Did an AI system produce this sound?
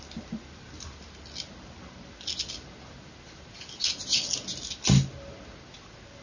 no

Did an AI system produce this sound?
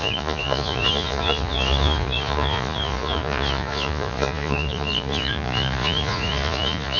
yes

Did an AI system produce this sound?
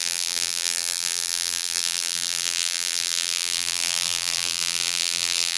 yes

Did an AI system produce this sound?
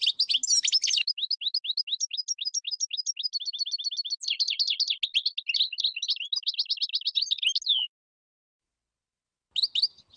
no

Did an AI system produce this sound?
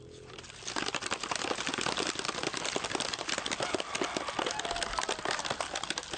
no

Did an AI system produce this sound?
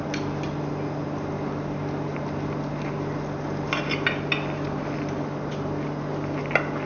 no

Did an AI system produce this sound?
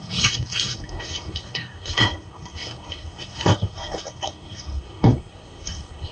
yes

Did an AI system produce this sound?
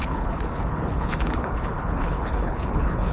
yes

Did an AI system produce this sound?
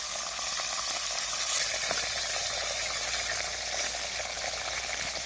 no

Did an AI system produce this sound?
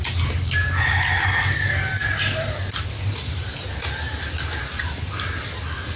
no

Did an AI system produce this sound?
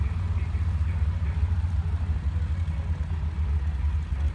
no